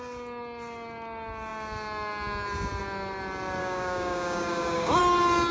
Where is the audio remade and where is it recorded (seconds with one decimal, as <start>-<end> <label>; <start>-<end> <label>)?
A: 0.0-3.6 recorded; 3.6-5.0 remade; 5.0-5.5 recorded